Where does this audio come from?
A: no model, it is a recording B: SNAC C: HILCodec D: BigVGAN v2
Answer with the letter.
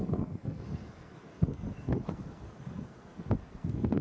B